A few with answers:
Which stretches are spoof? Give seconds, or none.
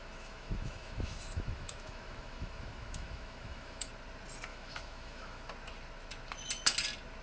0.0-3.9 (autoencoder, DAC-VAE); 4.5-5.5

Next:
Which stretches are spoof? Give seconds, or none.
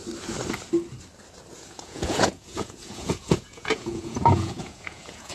1.5-5.3 (vocoder, Vocos)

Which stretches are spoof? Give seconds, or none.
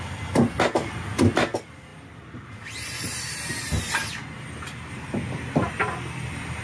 none